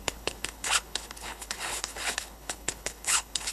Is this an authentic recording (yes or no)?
no